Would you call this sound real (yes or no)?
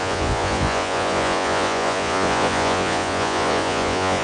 no